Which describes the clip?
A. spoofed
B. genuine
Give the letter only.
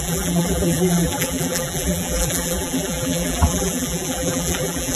A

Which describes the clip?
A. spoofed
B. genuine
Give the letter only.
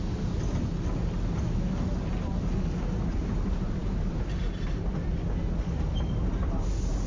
B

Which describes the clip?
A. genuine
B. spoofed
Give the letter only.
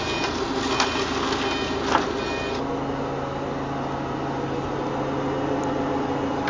A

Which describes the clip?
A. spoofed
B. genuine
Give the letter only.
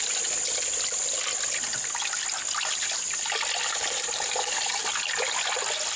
B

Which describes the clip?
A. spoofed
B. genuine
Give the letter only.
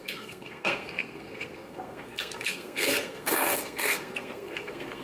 A